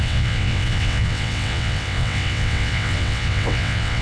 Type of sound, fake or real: fake